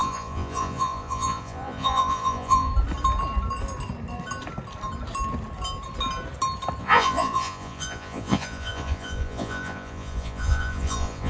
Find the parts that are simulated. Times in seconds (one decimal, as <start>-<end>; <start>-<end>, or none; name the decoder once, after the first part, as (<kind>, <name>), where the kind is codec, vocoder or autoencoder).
0.0-2.7 (vocoder, Vocos); 6.8-11.3